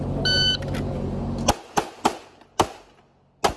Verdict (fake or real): real